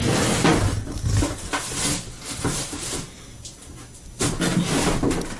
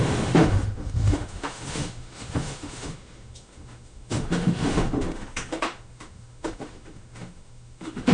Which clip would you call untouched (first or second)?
first